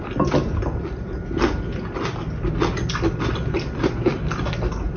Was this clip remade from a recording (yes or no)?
no